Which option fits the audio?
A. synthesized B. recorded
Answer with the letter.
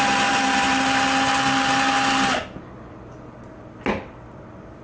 B